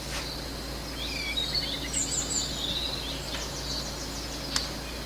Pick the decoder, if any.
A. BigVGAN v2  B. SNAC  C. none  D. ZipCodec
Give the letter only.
C